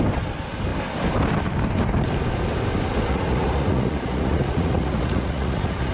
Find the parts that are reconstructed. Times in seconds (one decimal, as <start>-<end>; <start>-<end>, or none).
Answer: 3.1-5.9